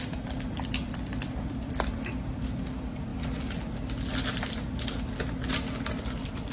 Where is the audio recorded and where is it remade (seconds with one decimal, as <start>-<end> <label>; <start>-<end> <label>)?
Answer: 0.0-3.1 remade; 3.1-5.8 recorded; 5.8-6.5 remade